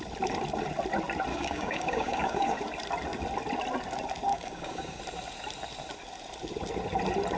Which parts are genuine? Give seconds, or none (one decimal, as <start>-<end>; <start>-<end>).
0.0-1.3; 2.6-4.3; 5.0-7.4